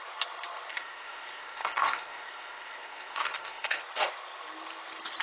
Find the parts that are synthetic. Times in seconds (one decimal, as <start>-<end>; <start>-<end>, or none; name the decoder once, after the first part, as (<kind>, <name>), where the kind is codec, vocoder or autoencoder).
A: 0.7-3.8 (codec, ZipCodec)

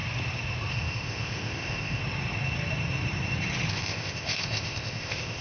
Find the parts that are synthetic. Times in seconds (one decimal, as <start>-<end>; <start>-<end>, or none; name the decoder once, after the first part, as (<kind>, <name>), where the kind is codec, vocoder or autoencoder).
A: 0.7-2.0 (codec, ZipCodec); 3.7-5.4

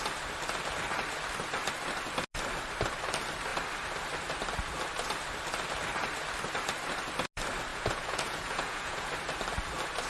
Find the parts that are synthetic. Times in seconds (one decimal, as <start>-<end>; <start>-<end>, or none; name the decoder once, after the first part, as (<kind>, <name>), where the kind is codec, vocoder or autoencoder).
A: 7.7-9.1 (vocoder, Vocos)